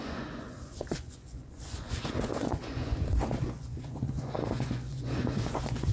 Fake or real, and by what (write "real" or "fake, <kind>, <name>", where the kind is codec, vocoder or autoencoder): fake, vocoder, Vocos